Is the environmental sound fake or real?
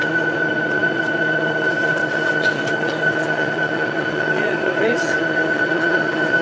fake